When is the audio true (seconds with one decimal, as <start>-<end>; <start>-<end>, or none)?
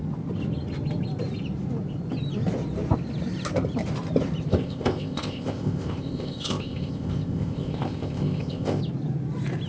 0.0-4.5; 8.8-9.7